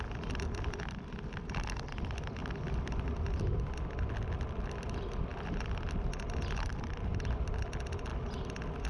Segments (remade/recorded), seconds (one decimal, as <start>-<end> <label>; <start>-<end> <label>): 0.0-8.9 recorded